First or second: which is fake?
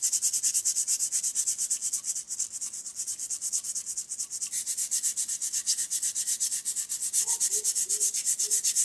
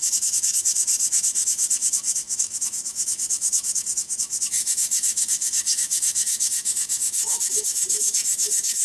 second